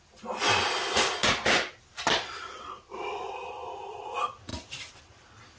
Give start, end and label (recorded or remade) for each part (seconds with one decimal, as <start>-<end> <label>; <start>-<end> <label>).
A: 0.0-1.2 recorded; 1.2-3.5 remade; 3.5-4.5 recorded; 4.5-5.0 remade; 5.0-5.6 recorded